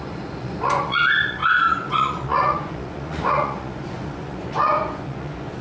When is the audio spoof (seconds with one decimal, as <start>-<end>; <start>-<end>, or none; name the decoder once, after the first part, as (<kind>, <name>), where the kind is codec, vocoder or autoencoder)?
0.0-5.6 (vocoder, Vocos)